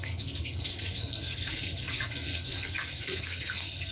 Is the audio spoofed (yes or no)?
yes